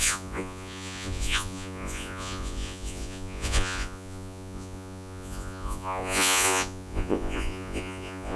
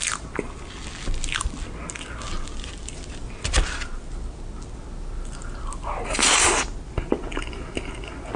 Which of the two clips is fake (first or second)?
first